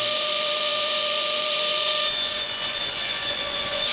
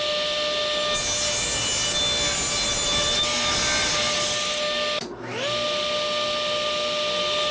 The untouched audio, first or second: second